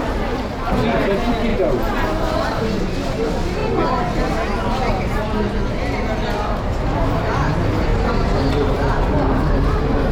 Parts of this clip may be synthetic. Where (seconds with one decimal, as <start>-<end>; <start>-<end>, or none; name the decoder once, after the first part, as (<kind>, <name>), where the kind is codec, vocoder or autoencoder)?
none